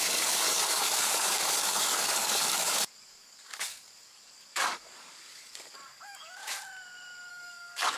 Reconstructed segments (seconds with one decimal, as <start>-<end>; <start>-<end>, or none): 0.0-6.4; 7.3-8.0